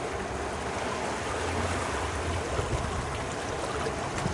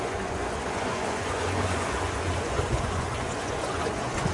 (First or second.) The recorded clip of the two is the first